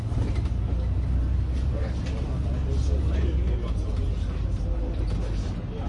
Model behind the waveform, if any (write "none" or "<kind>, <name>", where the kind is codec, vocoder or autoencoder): none